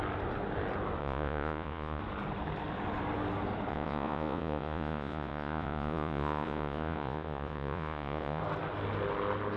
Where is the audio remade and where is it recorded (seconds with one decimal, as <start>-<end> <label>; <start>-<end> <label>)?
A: 0.0-1.0 recorded; 1.0-2.0 remade; 2.0-3.7 recorded; 3.7-8.4 remade; 8.4-9.6 recorded